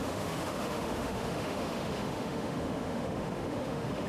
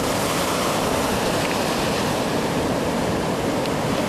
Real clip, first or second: second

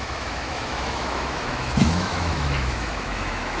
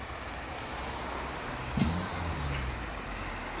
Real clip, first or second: second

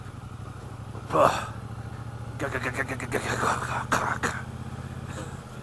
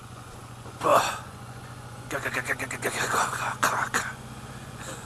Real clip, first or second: first